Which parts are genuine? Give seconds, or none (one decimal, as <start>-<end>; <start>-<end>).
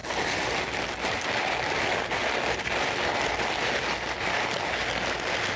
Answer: 0.0-5.6